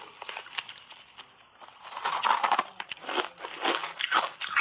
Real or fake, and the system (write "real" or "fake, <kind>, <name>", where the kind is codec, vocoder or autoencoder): real